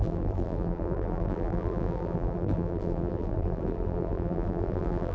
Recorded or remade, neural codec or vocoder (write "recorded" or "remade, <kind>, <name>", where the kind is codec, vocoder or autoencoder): remade, vocoder, BigVGAN v2